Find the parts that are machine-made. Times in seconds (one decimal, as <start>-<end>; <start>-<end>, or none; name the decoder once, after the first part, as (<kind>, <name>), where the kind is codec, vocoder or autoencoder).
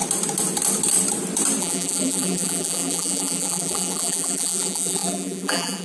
1.6-5.8 (vocoder, BigVGAN v2)